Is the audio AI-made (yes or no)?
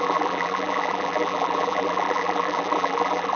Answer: yes